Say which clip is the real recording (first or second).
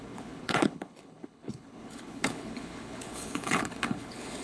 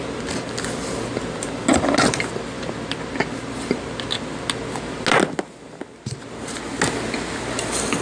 second